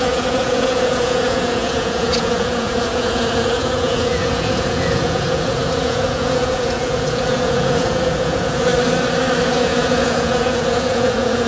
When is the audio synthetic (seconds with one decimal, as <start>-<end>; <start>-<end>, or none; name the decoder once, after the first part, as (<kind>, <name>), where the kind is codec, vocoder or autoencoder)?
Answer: 0.0-8.7 (vocoder, Vocos); 9.4-11.5